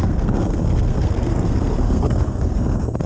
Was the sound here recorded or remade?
remade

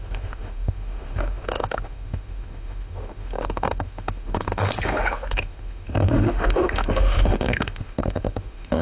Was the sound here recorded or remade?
remade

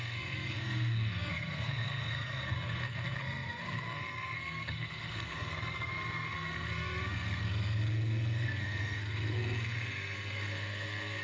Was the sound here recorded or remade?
remade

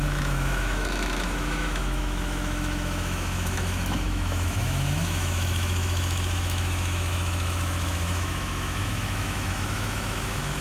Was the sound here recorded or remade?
remade